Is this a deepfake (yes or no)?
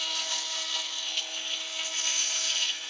yes